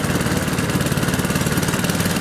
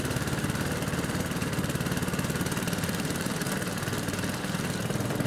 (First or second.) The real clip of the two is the first